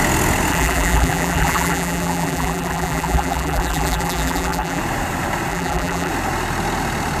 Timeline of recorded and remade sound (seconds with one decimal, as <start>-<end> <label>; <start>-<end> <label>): 0.0-0.5 recorded; 0.5-4.8 remade; 4.8-5.5 recorded; 5.5-6.1 remade; 6.1-7.2 recorded

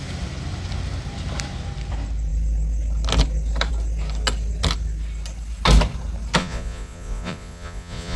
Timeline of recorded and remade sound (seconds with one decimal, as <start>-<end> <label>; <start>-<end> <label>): 0.0-6.4 recorded; 6.4-8.2 remade

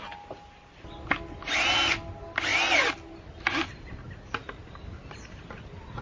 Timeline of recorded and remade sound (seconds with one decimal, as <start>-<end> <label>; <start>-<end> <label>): 0.0-6.0 recorded

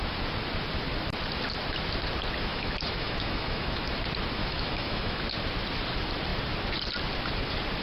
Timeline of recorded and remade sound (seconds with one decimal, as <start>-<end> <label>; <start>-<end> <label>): 0.0-2.5 recorded; 2.5-3.9 remade; 3.9-4.4 recorded; 4.4-5.2 remade; 5.2-7.8 recorded

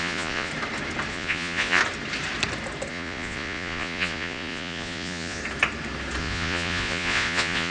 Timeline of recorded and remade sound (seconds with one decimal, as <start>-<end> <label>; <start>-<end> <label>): 0.0-0.5 remade; 0.5-1.1 recorded; 1.1-1.8 remade; 1.8-2.9 recorded; 2.9-5.4 remade; 5.4-6.2 recorded; 6.2-7.7 remade

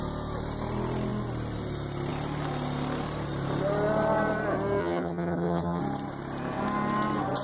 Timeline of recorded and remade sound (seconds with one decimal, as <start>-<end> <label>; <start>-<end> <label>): 0.0-4.8 recorded; 4.8-5.8 remade; 5.8-7.4 recorded

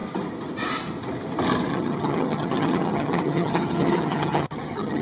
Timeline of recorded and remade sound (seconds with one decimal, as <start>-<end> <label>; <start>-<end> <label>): 0.0-1.7 recorded; 1.7-5.0 remade